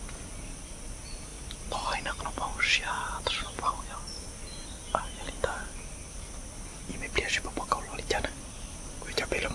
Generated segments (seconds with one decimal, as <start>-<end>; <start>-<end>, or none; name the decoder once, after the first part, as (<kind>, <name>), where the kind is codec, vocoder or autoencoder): none